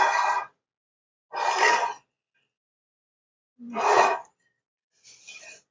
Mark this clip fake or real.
real